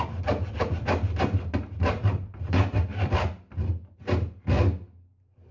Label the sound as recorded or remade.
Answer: recorded